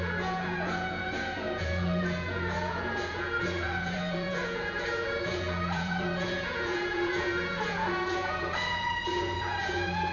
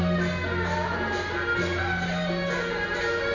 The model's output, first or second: first